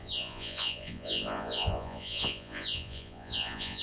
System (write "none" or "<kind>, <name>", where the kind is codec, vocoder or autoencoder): vocoder, Vocos